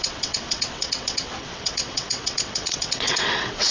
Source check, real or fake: fake